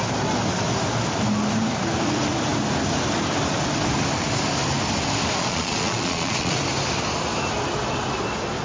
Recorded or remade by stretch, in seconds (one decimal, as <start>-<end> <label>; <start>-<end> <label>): 0.0-5.4 recorded; 5.4-6.6 remade; 6.6-8.6 recorded